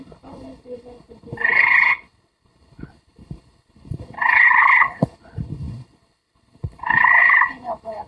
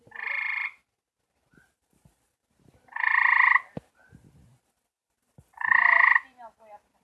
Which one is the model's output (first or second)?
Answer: first